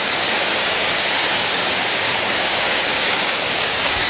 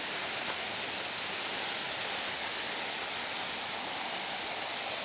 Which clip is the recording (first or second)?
second